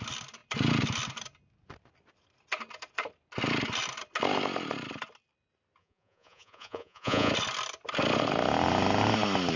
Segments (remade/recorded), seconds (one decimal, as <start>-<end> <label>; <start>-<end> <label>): 0.0-5.8 recorded; 5.8-7.3 remade; 7.3-9.6 recorded